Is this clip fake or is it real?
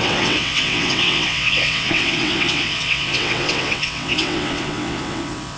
fake